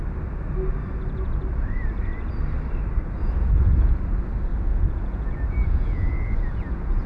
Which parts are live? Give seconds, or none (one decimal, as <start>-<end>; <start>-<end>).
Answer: 0.0-3.2; 3.9-4.5